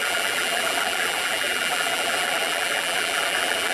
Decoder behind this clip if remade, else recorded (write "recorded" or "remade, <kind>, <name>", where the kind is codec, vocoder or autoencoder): remade, vocoder, BigVGAN v2